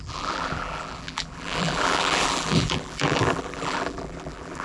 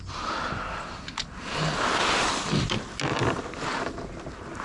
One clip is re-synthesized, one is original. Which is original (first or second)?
second